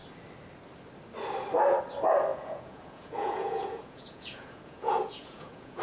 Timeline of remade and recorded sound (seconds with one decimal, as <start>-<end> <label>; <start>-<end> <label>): 0.0-2.3 recorded; 2.3-5.8 remade